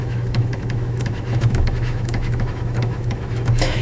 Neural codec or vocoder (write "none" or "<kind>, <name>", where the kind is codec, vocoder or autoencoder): autoencoder, DAC-VAE